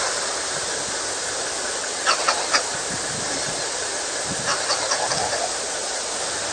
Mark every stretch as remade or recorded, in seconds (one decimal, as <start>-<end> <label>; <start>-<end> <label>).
0.0-1.8 recorded; 1.8-2.4 remade; 2.4-6.5 recorded